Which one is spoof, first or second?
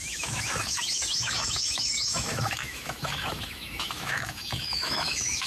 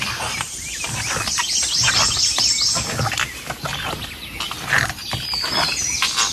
first